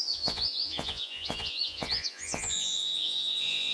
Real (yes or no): no